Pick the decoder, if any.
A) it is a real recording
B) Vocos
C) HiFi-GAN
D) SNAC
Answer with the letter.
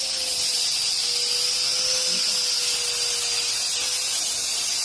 A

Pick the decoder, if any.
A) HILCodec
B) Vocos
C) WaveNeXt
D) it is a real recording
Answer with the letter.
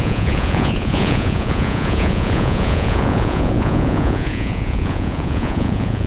B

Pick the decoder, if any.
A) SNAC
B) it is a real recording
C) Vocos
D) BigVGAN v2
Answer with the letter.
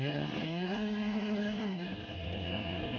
A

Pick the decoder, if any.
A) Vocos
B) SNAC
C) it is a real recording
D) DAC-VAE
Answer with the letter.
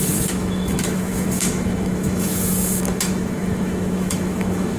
D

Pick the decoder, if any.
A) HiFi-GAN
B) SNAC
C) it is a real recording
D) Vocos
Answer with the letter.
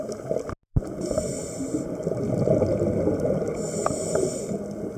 C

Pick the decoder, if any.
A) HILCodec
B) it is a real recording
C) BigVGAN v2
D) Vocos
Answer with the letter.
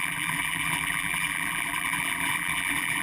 C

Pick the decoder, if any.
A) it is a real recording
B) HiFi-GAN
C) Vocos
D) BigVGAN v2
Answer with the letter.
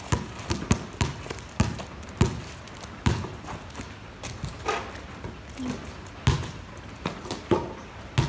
A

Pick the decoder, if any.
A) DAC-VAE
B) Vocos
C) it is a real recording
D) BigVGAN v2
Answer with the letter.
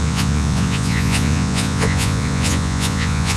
B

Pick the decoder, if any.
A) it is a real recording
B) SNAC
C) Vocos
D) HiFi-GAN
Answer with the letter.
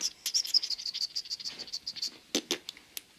A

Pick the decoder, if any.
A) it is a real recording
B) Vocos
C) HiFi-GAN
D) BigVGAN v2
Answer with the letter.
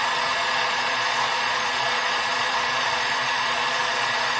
B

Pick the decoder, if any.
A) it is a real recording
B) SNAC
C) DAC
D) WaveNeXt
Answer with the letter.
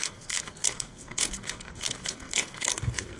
B